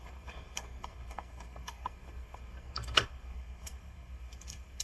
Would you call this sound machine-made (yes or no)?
yes